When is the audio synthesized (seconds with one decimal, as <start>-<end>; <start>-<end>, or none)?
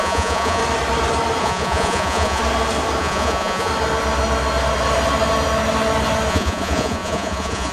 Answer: 0.0-0.6; 1.4-2.4; 3.0-3.7; 6.3-7.7